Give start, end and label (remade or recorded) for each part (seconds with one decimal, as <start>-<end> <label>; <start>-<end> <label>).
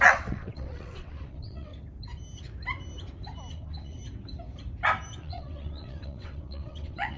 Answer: 0.0-1.7 remade; 1.7-3.5 recorded; 3.5-4.0 remade; 4.0-5.2 recorded; 5.2-7.2 remade